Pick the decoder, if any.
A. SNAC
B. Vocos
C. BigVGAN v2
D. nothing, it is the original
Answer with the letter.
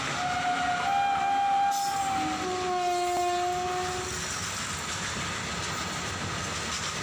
D